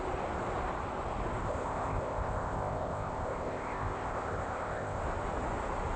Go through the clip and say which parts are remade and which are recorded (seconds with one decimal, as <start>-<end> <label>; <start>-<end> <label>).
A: 0.0-1.4 recorded; 1.4-5.0 remade; 5.0-6.0 recorded